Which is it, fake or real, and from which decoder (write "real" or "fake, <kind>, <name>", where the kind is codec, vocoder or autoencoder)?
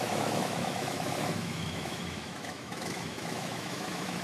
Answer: fake, autoencoder, DAC-VAE